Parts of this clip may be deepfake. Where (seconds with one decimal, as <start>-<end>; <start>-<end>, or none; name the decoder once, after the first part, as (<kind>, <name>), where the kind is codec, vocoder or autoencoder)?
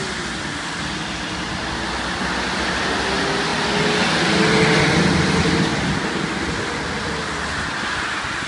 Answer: none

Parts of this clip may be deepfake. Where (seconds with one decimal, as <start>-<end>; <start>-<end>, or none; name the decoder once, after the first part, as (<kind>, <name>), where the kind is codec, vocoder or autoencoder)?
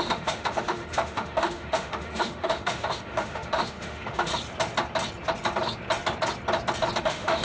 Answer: 0.0-4.3 (autoencoder, DAC-VAE); 7.0-7.4